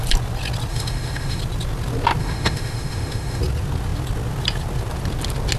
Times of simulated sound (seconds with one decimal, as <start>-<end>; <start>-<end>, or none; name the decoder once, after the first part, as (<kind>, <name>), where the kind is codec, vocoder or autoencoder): 0.7-1.4 (autoencoder, DAC-VAE); 2.2-3.4